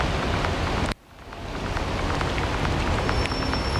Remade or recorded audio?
recorded